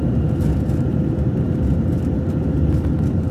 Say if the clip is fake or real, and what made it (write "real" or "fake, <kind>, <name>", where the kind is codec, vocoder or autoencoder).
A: real